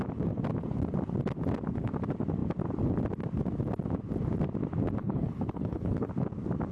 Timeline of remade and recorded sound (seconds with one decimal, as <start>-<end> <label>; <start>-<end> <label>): 0.0-5.0 recorded; 5.0-6.1 remade; 6.1-6.7 recorded